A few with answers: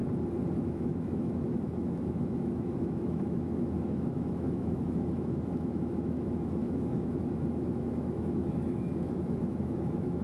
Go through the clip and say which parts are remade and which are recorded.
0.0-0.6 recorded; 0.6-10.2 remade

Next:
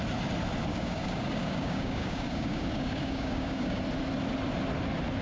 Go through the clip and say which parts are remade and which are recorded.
0.0-0.7 recorded; 0.7-3.8 remade; 3.8-5.2 recorded

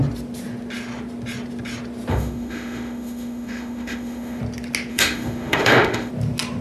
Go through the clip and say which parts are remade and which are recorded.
0.0-2.1 recorded; 2.1-4.4 remade; 4.4-4.9 recorded; 4.9-6.1 remade; 6.1-6.6 recorded